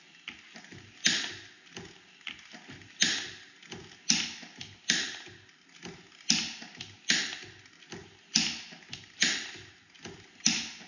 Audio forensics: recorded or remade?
recorded